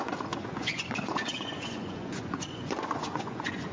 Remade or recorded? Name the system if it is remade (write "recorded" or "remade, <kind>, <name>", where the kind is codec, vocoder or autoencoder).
remade, vocoder, Vocos